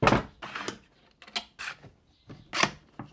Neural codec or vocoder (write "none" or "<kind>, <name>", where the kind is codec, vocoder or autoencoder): none